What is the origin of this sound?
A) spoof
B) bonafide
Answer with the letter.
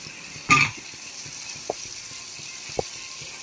A